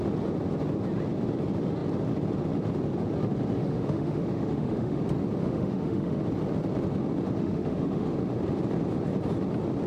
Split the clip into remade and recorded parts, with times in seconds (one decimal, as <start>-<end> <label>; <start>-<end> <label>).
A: 0.0-3.6 recorded; 3.6-5.0 remade; 5.0-5.4 recorded; 5.4-6.2 remade; 6.2-7.4 recorded; 7.4-8.1 remade; 8.1-9.9 recorded